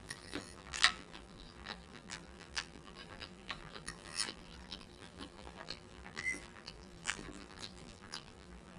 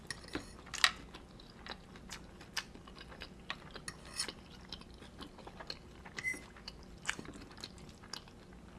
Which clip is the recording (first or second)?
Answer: second